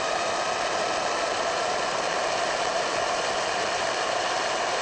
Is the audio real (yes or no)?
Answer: no